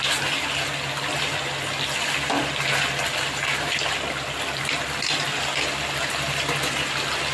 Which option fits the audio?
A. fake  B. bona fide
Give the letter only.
B